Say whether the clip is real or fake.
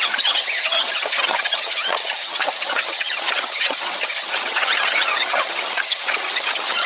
fake